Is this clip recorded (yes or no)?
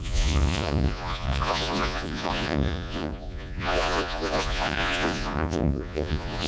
no